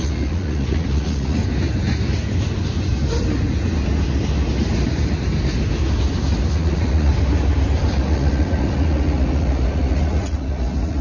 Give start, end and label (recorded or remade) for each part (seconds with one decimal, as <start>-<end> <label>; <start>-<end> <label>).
0.0-1.4 remade; 1.4-6.5 recorded; 6.5-7.1 remade; 7.1-7.9 recorded; 7.9-11.0 remade